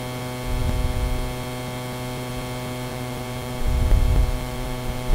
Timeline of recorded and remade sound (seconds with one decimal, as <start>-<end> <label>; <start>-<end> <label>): 0.0-2.9 recorded; 2.9-5.1 remade